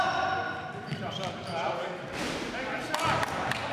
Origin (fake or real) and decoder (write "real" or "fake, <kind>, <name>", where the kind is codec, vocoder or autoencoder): real